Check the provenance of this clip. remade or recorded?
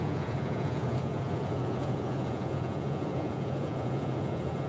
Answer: remade